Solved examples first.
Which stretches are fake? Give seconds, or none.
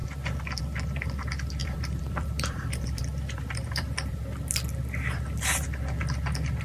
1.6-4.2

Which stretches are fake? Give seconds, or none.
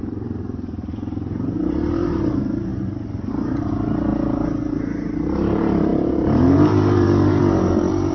0.0-2.7; 3.3-4.1; 4.7-8.1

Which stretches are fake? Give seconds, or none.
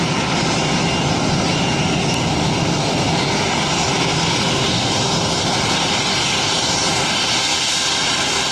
7.5-8.5